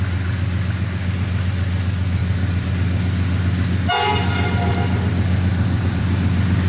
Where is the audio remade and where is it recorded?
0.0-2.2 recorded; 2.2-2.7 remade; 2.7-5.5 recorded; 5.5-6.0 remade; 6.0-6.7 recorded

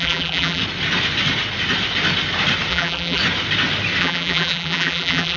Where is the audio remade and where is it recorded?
0.0-0.6 remade; 0.6-2.7 recorded; 2.7-3.2 remade; 3.2-4.0 recorded; 4.0-5.4 remade